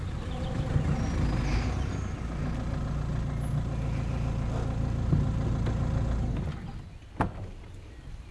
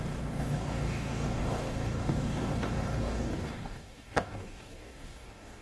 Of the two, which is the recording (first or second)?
first